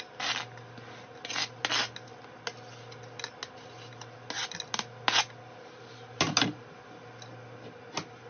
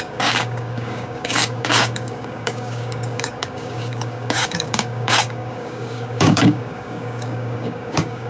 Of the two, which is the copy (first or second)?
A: second